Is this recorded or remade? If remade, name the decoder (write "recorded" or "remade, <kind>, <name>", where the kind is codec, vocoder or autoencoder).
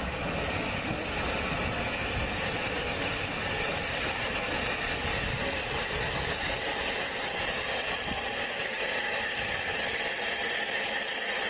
recorded